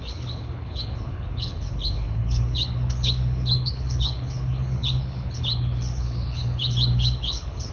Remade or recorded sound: remade